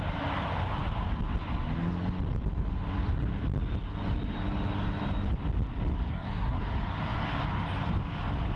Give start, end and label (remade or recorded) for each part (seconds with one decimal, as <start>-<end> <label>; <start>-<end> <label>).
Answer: 0.0-6.1 recorded; 6.1-6.6 remade; 6.6-8.6 recorded